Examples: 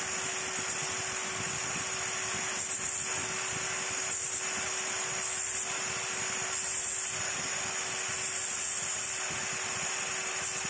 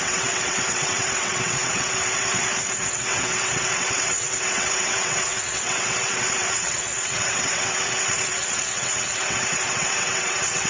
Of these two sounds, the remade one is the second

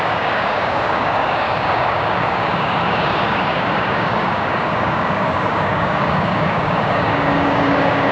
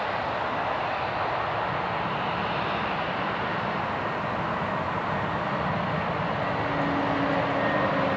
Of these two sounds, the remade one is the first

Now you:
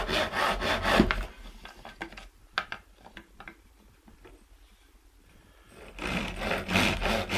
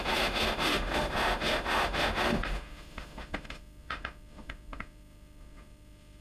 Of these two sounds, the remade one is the second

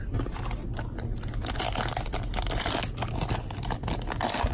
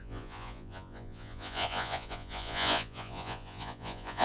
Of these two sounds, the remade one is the second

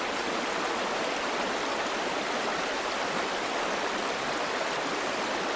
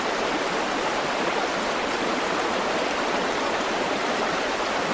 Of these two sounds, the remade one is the second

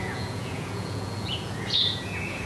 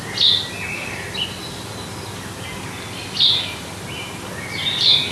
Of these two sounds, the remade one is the first